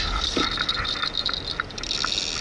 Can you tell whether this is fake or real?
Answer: real